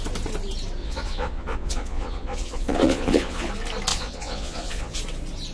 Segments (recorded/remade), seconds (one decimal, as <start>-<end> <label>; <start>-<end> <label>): 0.0-0.8 recorded; 0.8-3.5 remade; 3.5-3.9 recorded; 3.9-5.0 remade; 5.0-5.5 recorded